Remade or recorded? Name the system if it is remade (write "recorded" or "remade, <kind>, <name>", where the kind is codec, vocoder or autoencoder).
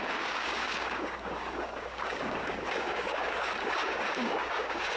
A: remade, codec, DAC